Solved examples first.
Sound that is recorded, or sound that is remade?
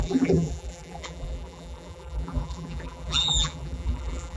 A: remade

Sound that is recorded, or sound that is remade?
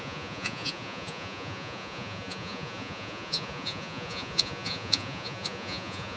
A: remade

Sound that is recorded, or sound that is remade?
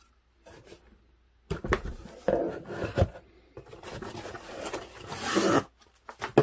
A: recorded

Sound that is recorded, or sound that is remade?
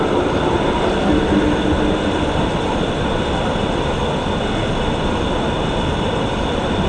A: recorded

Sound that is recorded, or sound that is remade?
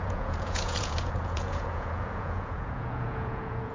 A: remade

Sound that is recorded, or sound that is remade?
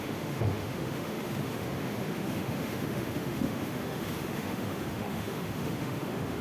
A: remade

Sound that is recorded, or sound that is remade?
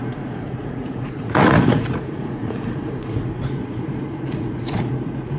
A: remade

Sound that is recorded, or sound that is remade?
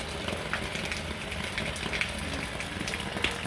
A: recorded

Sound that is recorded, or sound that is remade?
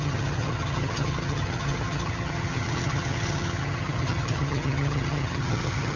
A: remade